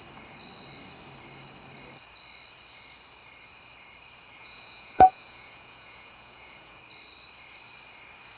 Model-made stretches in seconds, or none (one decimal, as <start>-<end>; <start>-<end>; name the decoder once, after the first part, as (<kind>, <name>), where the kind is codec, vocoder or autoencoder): 4.4-6.8 (vocoder, Vocos)